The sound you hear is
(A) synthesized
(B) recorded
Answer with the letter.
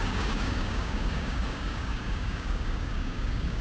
A